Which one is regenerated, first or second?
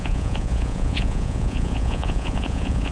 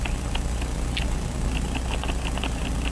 first